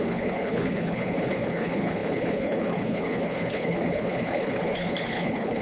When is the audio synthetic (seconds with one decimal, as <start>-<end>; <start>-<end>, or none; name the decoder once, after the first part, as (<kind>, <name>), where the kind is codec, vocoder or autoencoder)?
0.0-5.6 (codec, HILCodec)